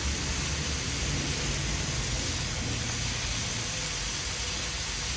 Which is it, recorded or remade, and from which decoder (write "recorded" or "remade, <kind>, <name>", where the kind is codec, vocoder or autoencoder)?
recorded